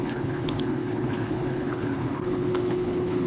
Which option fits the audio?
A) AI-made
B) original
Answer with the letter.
A